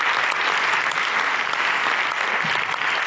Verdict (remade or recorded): recorded